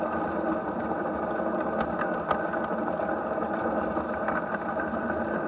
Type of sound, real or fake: real